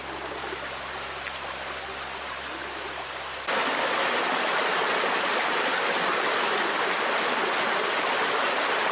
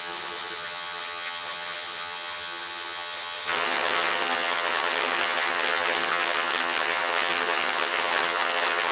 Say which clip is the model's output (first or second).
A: second